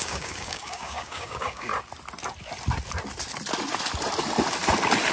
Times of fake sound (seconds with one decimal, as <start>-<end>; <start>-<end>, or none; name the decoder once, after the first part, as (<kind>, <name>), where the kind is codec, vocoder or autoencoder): 0.0-1.7 (codec, DAC)